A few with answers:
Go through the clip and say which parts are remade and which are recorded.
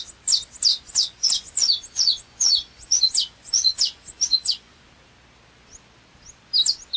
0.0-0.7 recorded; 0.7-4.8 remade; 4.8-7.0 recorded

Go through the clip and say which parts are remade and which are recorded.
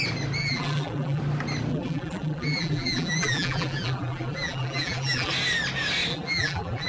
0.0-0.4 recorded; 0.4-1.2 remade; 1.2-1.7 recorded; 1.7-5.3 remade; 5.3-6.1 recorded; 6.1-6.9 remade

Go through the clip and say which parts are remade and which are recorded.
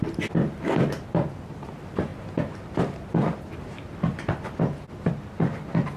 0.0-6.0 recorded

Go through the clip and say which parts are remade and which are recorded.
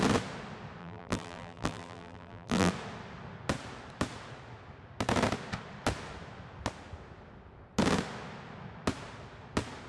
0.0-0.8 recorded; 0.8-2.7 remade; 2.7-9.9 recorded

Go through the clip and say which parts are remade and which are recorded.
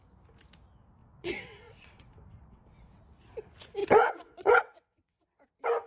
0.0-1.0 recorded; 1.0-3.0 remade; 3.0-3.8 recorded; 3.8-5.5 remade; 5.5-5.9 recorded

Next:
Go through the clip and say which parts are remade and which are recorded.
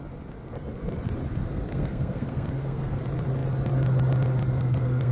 0.0-1.4 recorded; 1.4-3.0 remade; 3.0-4.5 recorded; 4.5-5.1 remade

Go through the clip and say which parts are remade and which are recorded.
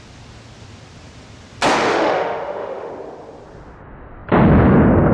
0.0-1.9 recorded; 1.9-2.9 remade; 2.9-5.1 recorded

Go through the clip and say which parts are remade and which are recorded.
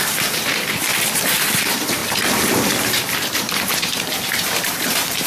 0.0-0.9 remade; 0.9-1.6 recorded; 1.6-2.0 remade; 2.0-3.4 recorded; 3.4-5.3 remade